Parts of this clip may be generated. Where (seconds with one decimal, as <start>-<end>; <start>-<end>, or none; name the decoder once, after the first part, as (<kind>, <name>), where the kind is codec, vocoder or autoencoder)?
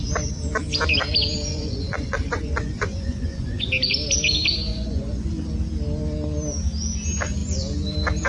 1.5-3.7 (vocoder, Vocos); 4.7-5.3